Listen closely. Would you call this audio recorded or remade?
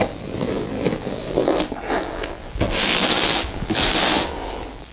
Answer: remade